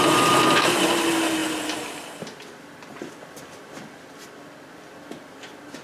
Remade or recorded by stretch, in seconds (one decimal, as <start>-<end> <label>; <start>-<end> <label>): 0.0-5.8 recorded